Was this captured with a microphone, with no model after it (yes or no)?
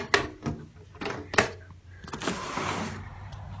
yes